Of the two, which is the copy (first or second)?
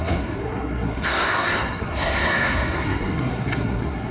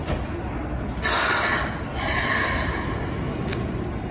first